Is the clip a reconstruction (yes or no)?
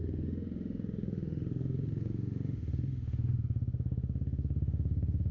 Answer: yes